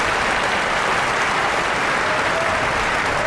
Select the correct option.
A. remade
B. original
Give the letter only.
B